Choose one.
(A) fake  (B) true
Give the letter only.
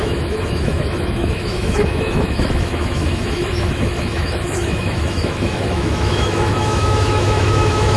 A